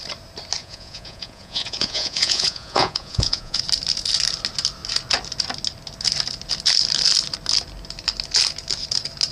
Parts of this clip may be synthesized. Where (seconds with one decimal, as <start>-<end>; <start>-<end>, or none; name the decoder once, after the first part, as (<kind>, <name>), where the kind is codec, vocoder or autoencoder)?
0.6-3.6 (vocoder, Vocos)